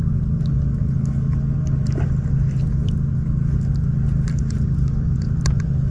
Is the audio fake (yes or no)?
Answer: no